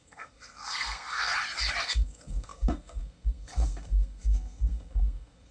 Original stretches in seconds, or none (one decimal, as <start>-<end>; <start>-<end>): 1.3-1.8